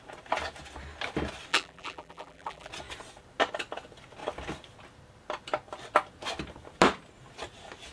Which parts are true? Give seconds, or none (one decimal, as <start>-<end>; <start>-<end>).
0.0-1.5; 2.7-7.9